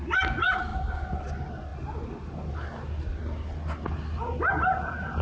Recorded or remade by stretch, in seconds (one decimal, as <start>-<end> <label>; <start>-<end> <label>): 0.0-5.2 recorded